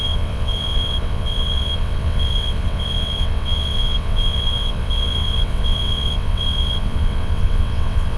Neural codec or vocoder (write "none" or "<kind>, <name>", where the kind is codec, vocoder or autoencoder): vocoder, WaveNeXt